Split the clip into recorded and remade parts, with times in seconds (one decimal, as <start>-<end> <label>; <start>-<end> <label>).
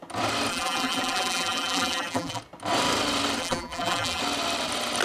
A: 0.0-0.5 recorded; 0.5-2.4 remade; 2.4-3.4 recorded; 3.4-4.2 remade; 4.2-5.0 recorded